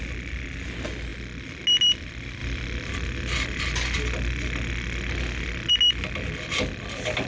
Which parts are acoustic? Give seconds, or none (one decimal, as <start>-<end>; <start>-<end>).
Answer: 0.0-7.3